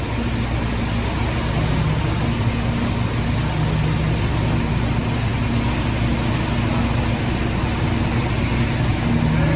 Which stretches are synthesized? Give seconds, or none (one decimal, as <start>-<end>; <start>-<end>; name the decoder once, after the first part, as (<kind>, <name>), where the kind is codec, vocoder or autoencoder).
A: none